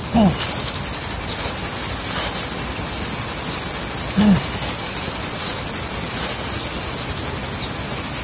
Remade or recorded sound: recorded